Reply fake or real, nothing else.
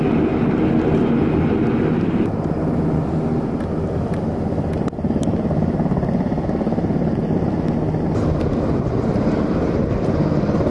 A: real